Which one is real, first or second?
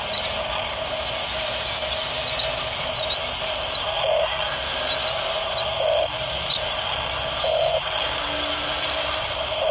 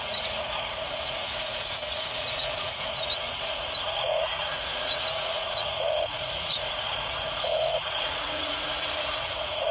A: first